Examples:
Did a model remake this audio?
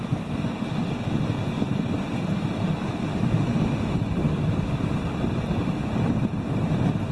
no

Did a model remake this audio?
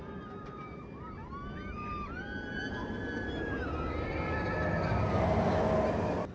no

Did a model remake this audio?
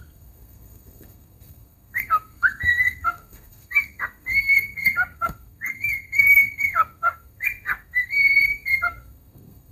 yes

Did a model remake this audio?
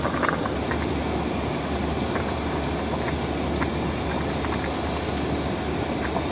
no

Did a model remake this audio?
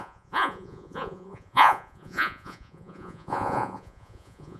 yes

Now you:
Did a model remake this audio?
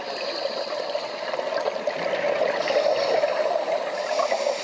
no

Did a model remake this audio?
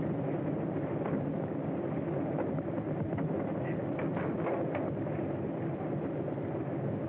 no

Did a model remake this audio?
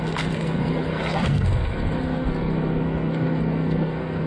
yes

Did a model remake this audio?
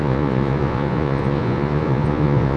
yes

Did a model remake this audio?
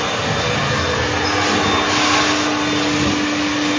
no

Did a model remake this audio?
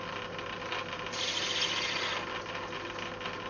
no